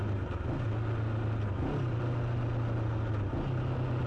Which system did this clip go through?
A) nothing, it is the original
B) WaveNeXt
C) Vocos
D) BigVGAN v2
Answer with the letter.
A